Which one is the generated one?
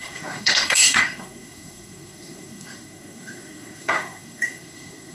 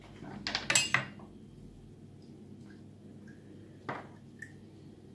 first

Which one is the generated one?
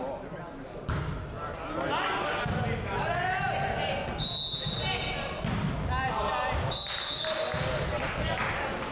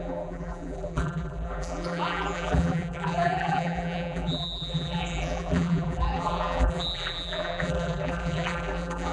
second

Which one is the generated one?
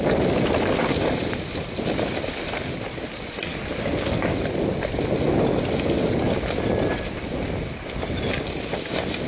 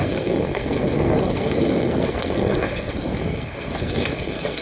second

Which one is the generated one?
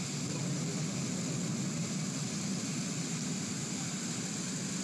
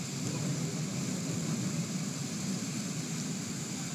second